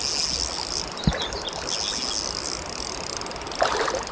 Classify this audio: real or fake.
real